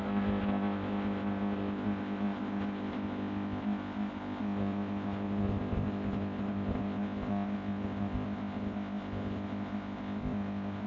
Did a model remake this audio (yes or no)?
yes